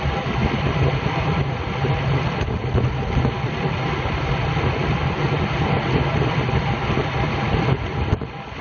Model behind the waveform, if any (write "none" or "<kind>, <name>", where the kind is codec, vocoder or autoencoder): none